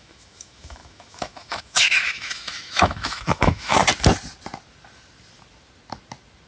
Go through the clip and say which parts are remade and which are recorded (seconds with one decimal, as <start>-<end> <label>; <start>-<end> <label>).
0.0-3.8 remade; 3.8-6.5 recorded